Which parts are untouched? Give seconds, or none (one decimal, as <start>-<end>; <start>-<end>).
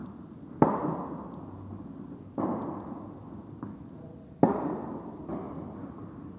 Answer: 0.0-6.4